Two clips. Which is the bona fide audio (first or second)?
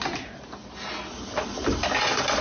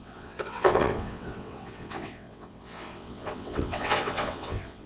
first